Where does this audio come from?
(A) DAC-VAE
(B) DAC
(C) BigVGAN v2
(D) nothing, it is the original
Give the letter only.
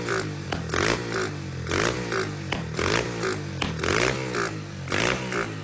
D